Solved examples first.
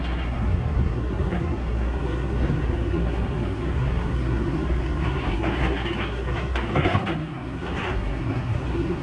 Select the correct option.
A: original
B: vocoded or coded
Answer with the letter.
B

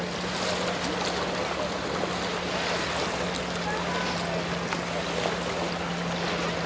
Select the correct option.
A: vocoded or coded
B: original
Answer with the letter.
B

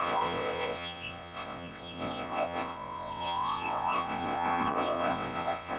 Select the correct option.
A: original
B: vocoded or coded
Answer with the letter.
B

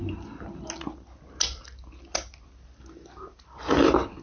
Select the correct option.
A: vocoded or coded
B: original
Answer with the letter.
B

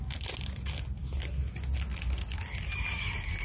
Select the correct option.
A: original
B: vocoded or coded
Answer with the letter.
A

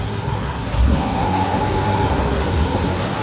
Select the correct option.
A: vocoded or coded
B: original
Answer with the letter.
A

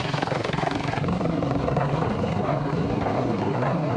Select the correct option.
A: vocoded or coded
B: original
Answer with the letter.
A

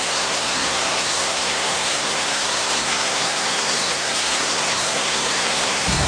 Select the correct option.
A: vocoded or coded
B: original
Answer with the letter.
A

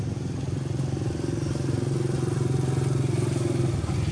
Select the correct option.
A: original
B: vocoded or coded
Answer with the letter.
A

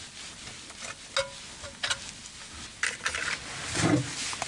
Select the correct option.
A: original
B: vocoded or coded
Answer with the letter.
A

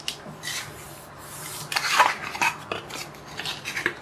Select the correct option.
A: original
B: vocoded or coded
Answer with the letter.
A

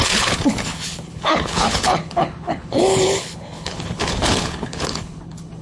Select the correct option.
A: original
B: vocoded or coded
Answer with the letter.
B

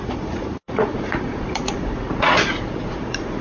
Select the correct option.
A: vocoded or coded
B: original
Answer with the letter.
A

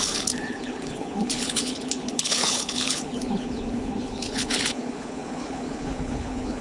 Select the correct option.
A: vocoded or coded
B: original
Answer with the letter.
A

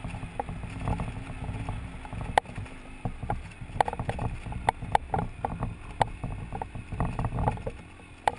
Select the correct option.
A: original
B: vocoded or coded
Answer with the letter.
A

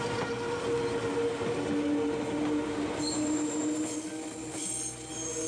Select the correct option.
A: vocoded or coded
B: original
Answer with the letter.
B